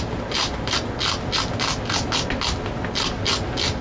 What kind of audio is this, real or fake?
real